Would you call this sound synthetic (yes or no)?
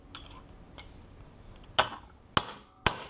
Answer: no